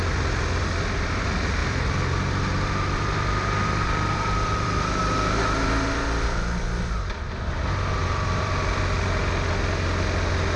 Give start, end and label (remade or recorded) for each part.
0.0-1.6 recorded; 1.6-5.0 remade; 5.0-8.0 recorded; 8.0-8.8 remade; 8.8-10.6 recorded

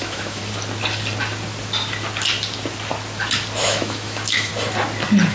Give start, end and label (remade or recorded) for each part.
0.0-0.4 remade; 0.4-3.6 recorded; 3.6-4.5 remade; 4.5-5.3 recorded

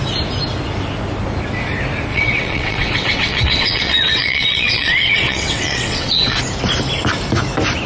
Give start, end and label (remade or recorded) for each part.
0.0-2.1 recorded; 2.1-6.4 remade; 6.4-7.9 recorded

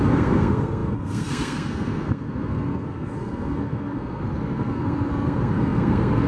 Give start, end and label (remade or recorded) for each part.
0.0-6.3 remade

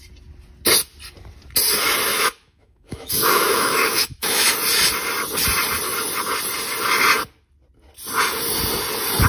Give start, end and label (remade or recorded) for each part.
0.0-2.1 recorded; 2.1-4.5 remade; 4.5-9.3 recorded

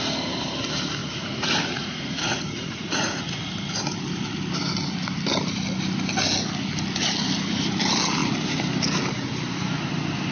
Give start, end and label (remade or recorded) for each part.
0.0-1.0 recorded; 1.0-3.2 remade; 3.2-10.3 recorded